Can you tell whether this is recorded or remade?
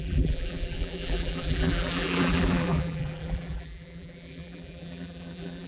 remade